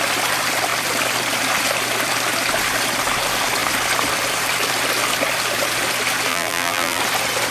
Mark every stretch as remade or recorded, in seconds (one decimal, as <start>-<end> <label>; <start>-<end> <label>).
0.0-6.3 recorded; 6.3-7.0 remade; 7.0-7.5 recorded